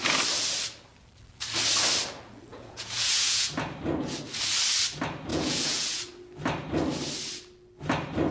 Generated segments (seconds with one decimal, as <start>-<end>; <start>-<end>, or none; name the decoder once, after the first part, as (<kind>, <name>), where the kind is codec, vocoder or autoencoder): 2.5-3.5 (vocoder, Vocos); 5.3-6.0